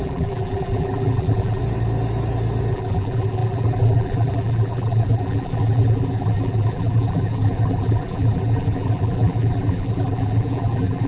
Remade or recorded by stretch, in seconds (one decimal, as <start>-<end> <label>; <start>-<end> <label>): 0.0-1.6 remade; 1.6-2.7 recorded; 2.7-11.1 remade